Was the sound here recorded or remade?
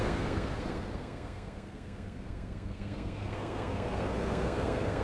remade